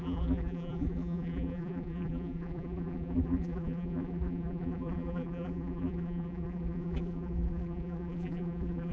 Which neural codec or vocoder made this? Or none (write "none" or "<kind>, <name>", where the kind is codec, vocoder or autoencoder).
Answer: vocoder, BigVGAN v2